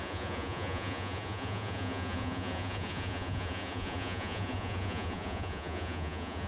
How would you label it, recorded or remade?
remade